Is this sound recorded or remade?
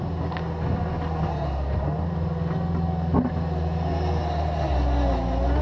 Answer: recorded